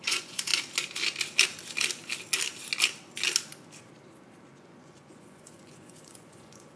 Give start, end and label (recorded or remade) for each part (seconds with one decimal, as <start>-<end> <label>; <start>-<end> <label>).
0.0-0.5 remade; 0.5-4.5 recorded; 4.5-6.8 remade